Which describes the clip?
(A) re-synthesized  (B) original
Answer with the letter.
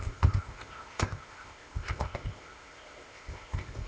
A